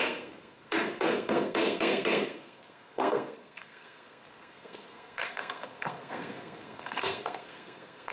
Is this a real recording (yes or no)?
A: no